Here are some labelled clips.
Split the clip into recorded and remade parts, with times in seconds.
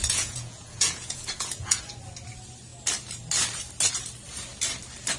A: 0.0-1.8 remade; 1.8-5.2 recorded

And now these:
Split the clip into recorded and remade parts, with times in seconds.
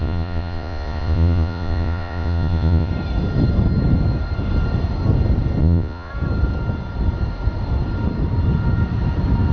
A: 0.0-2.9 remade; 2.9-5.6 recorded; 5.6-6.1 remade; 6.1-9.5 recorded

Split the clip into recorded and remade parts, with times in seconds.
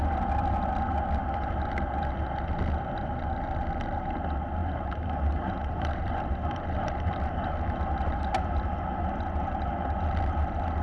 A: 0.0-4.6 recorded; 4.6-7.5 remade; 7.5-10.8 recorded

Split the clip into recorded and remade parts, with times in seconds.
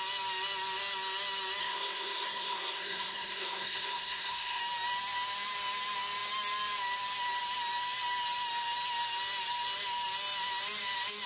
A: 0.0-1.6 recorded; 1.6-4.6 remade; 4.6-11.3 recorded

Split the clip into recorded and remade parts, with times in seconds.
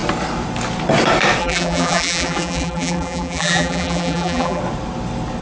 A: 0.0-1.4 recorded; 1.4-4.6 remade; 4.6-5.4 recorded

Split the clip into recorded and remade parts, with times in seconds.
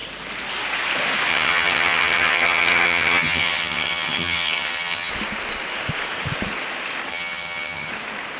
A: 0.0-1.3 recorded; 1.3-5.1 remade; 5.1-7.1 recorded; 7.1-7.9 remade; 7.9-8.4 recorded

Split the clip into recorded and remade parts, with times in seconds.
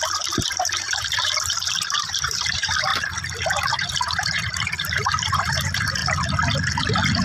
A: 0.0-2.9 remade; 2.9-3.7 recorded; 3.7-6.0 remade; 6.0-7.2 recorded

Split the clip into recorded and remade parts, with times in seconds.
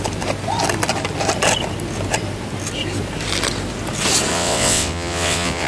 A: 0.0-4.3 recorded; 4.3-5.7 remade